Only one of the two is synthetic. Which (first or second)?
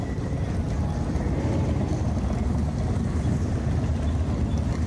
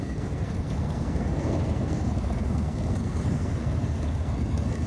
second